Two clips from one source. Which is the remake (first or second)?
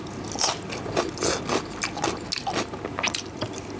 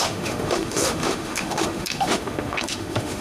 second